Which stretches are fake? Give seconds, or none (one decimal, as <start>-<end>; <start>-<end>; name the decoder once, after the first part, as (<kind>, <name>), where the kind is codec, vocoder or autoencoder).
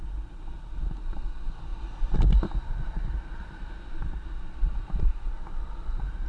none